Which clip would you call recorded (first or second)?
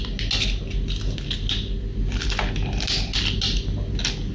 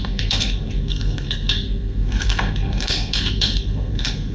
first